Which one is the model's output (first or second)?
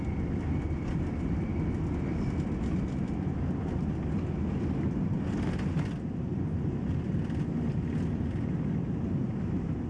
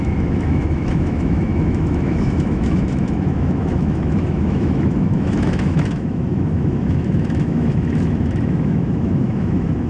second